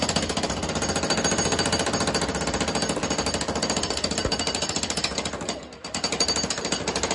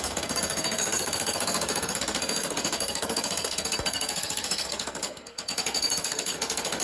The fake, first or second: second